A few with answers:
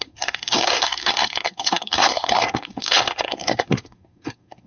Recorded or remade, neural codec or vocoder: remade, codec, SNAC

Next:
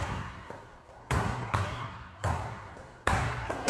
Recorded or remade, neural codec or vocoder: remade, codec, SNAC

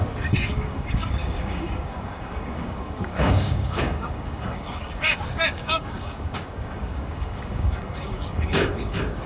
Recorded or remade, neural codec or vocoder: remade, codec, DAC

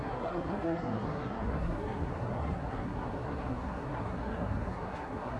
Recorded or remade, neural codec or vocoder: remade, codec, SNAC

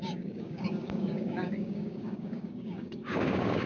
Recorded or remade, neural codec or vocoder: remade, codec, DAC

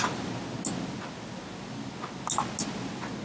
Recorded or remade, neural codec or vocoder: recorded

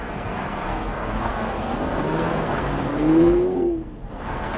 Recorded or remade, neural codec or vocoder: remade, codec, SNAC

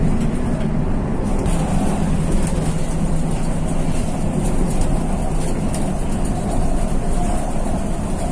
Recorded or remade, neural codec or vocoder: recorded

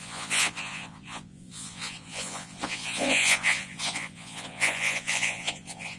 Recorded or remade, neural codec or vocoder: remade, vocoder, Vocos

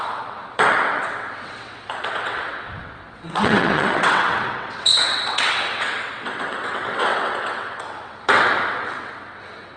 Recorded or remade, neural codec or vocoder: remade, vocoder, WaveNeXt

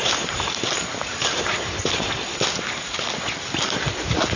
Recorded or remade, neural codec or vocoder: recorded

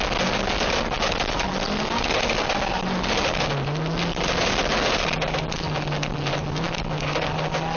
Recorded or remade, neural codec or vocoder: recorded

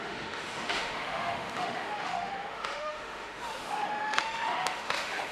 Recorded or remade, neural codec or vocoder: remade, autoencoder, DAC-VAE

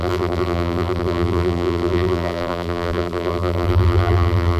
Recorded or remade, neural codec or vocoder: remade, vocoder, BigVGAN v2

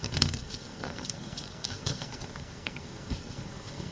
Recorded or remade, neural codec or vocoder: remade, codec, SNAC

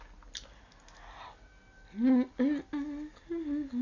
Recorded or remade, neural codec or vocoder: recorded